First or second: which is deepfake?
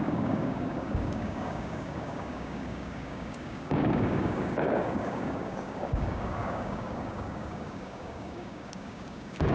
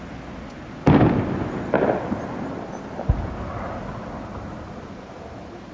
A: first